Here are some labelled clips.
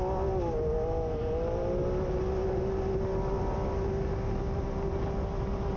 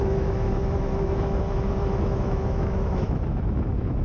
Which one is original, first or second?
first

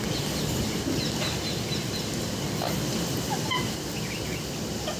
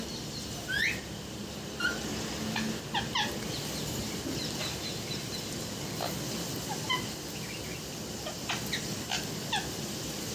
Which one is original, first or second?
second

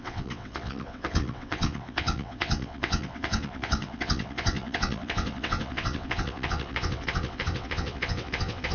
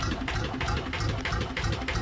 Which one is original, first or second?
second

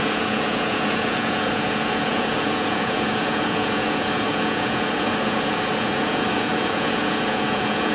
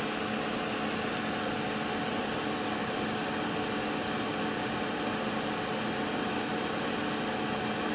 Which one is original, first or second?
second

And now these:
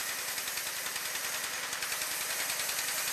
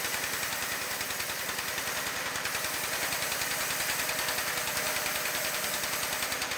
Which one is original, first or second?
first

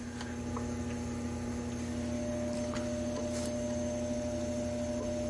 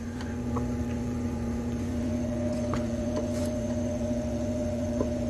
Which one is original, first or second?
first